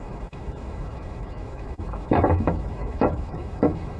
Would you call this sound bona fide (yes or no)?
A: no